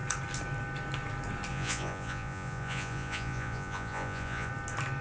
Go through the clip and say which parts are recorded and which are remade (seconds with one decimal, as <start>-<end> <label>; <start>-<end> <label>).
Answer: 0.0-1.5 recorded; 1.5-4.5 remade; 4.5-5.0 recorded